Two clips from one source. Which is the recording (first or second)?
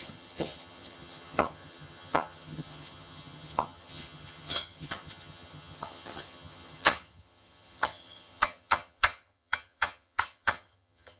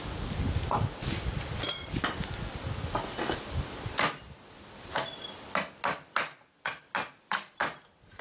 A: second